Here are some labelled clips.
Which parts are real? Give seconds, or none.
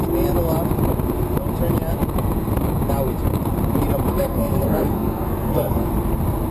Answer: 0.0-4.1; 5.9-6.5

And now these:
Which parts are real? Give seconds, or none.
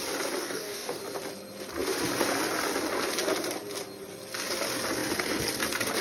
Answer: 0.0-0.4; 1.0-6.0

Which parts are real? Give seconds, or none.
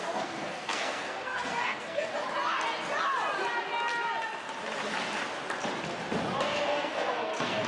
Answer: 2.1-6.4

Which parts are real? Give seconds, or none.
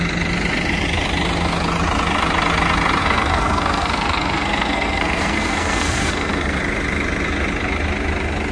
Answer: 0.0-3.0; 6.6-8.5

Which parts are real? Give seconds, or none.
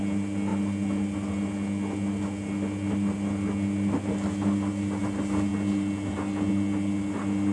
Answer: 0.0-7.5